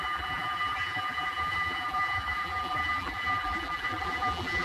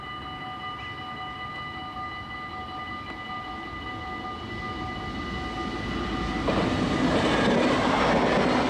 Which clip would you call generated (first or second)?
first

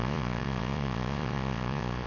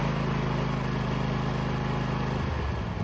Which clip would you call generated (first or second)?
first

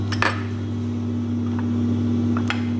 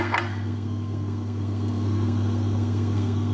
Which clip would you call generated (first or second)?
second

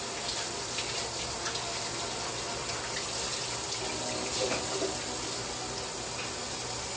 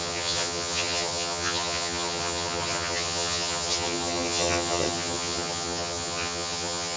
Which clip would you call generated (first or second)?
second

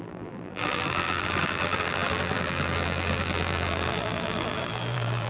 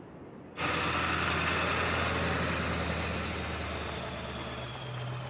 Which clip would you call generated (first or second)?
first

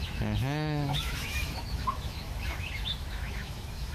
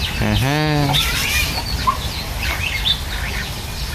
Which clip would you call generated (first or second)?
first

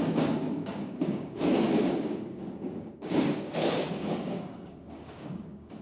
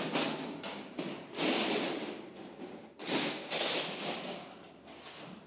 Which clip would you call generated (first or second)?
first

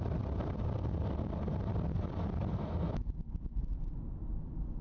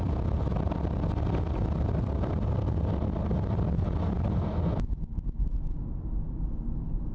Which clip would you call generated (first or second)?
first